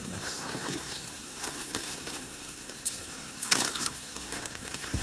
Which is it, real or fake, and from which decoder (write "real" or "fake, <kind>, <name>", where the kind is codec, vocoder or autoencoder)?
fake, codec, SNAC